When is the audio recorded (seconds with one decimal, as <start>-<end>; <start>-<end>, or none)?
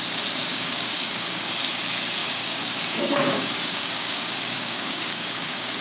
0.0-0.5; 1.5-2.2